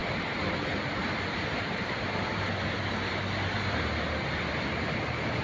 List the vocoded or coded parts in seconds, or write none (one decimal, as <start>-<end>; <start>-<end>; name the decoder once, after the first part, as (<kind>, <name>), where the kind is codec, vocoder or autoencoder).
0.0-3.2 (vocoder, BigVGAN v2)